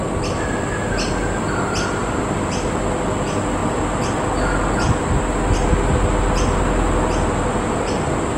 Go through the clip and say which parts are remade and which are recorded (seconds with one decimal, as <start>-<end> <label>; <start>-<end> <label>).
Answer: 0.0-2.0 recorded; 2.0-2.7 remade; 2.7-8.4 recorded